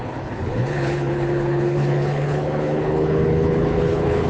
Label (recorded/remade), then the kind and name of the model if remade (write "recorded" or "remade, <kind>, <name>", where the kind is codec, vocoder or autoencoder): remade, codec, HILCodec